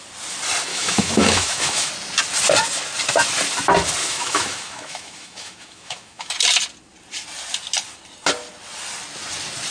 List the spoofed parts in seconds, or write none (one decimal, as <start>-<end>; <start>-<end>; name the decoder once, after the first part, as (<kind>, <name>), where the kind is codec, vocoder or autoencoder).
0.7-1.9 (autoencoder, DAC-VAE); 4.0-6.3